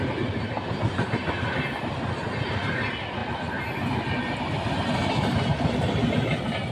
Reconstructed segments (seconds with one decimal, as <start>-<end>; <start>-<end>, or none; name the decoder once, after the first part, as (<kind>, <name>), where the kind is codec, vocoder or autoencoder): none

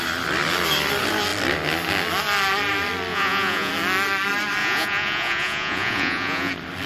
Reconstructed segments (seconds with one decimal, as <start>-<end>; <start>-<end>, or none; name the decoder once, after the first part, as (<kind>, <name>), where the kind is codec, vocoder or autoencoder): 3.1-3.7 (vocoder, Vocos); 4.6-6.5

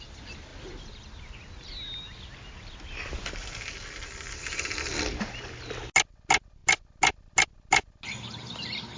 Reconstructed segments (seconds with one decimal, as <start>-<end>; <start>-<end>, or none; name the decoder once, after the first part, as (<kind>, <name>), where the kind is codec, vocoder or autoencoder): none

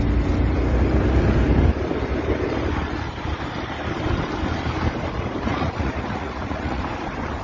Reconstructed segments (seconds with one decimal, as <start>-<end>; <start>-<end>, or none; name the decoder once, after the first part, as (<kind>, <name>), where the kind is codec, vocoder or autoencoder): 5.5-6.8 (vocoder, Vocos)

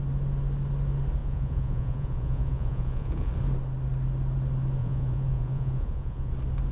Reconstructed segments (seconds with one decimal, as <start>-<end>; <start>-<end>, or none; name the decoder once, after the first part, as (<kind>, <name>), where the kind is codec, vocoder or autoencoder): 1.2-3.3 (vocoder, Vocos); 4.8-6.3

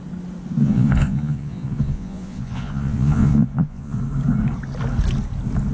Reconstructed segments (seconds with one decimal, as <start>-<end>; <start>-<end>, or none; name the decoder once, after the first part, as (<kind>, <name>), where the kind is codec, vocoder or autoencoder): 0.6-4.0 (vocoder, Vocos)